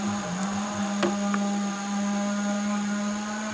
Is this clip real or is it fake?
real